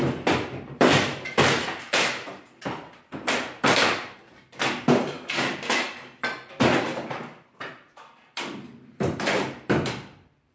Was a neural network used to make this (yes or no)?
yes